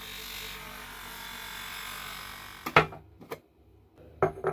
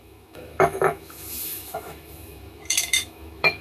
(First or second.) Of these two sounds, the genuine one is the first